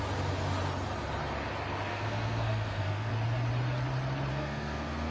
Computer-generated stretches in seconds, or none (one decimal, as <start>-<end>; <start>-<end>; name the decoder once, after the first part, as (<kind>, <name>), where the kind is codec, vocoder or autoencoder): 1.9-3.1 (codec, SNAC); 4.3-5.1